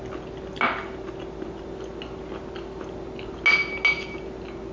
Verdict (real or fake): real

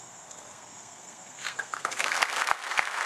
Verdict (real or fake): fake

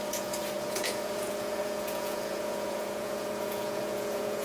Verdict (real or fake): fake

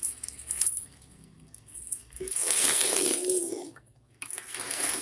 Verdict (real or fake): fake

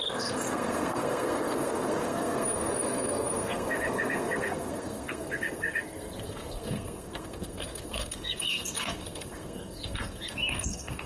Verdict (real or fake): fake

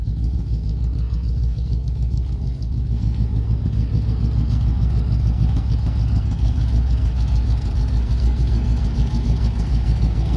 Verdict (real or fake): fake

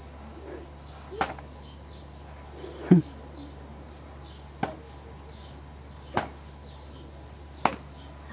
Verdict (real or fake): real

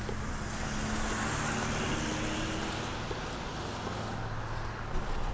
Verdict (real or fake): real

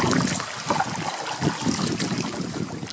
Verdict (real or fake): real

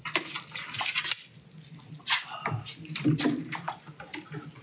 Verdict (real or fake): real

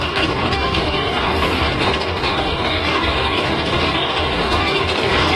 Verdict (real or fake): fake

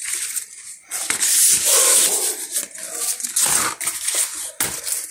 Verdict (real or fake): real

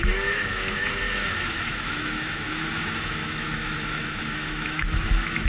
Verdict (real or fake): fake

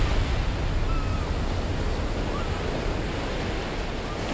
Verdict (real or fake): real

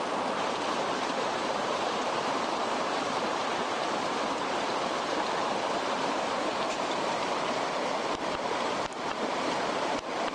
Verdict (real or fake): fake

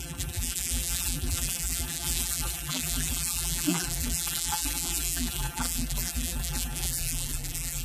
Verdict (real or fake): fake